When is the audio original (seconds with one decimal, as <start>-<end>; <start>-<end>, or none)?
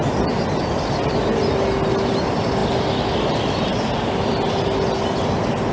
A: 0.0-5.7